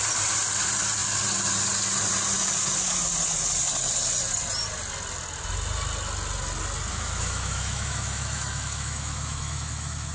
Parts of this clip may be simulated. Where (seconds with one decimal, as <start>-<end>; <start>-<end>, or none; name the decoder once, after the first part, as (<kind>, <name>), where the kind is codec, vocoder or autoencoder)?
6.9-10.1 (autoencoder, DAC-VAE)